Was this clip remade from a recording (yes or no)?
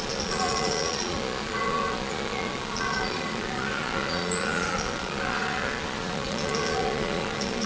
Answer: yes